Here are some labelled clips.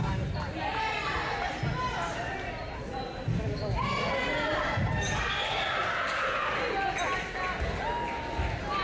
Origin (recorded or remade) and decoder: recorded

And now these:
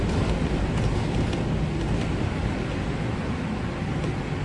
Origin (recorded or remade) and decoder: recorded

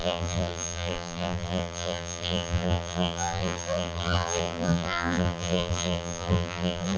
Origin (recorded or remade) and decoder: remade, vocoder, BigVGAN v2